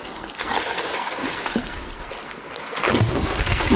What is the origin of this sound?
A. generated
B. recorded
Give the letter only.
A